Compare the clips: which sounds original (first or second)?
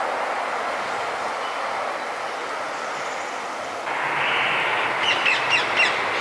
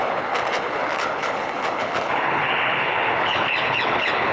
first